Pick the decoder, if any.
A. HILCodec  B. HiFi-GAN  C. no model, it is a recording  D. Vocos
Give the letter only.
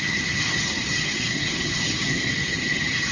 B